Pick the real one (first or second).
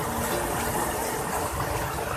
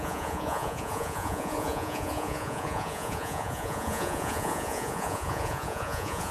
first